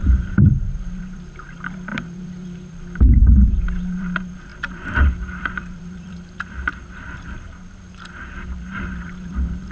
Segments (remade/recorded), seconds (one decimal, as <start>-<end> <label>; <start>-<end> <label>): 0.0-9.7 remade

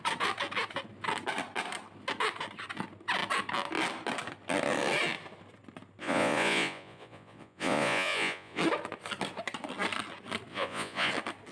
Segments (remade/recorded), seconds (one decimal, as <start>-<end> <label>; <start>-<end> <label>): 0.0-6.0 recorded; 6.0-8.6 remade; 8.6-10.5 recorded; 10.5-11.1 remade; 11.1-11.5 recorded